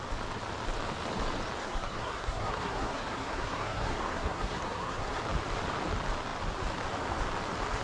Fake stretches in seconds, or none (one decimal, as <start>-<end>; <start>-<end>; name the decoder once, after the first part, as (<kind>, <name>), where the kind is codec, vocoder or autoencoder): 1.6-5.2 (codec, SNAC)